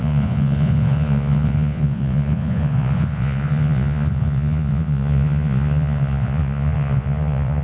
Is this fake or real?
fake